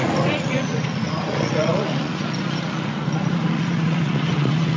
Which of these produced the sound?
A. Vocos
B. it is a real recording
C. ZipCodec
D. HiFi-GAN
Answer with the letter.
A